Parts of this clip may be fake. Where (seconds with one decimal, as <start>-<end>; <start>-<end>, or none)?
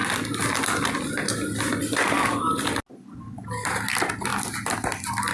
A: none